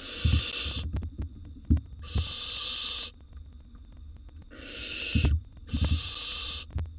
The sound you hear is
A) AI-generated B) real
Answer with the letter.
B